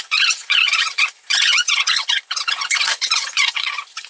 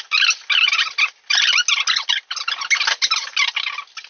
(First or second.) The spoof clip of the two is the first